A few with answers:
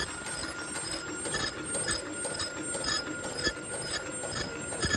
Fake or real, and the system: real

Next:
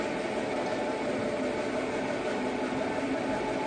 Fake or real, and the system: real